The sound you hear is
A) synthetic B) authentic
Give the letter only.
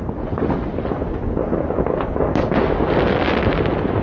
B